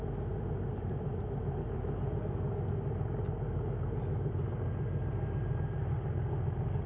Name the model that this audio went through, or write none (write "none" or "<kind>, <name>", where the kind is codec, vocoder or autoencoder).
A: none